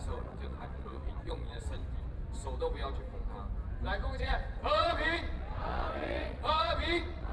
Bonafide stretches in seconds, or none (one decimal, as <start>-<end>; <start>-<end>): 1.8-4.2